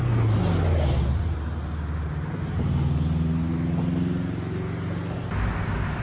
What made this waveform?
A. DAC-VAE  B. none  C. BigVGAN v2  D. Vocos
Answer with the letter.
B